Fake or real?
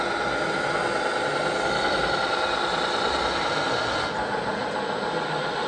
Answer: real